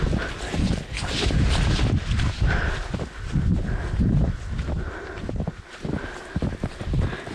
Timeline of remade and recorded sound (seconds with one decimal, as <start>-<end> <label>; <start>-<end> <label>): 0.0-0.6 recorded; 0.6-1.3 remade; 1.3-7.3 recorded